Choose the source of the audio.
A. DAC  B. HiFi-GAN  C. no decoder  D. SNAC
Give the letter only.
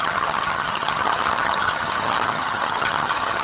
B